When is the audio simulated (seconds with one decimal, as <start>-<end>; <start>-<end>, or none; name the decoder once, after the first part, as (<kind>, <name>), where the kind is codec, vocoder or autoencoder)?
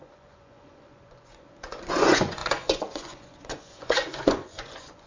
0.0-5.1 (vocoder, Vocos)